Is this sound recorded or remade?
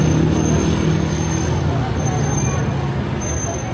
recorded